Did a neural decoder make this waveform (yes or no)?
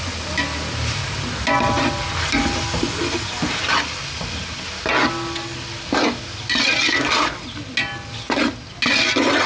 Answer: no